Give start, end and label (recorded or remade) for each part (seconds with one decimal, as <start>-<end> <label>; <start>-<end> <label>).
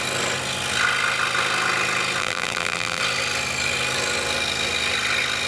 0.0-2.2 recorded; 2.2-3.0 remade; 3.0-5.5 recorded